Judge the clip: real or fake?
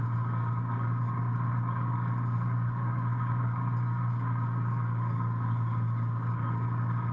fake